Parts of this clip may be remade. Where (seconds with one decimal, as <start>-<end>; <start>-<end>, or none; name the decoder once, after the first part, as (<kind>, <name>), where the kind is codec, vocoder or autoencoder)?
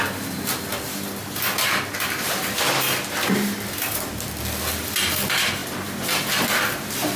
none